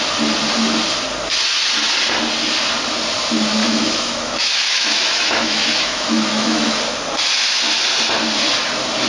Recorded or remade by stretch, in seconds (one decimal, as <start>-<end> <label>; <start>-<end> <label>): 0.0-3.6 recorded; 3.6-6.8 remade; 6.8-9.1 recorded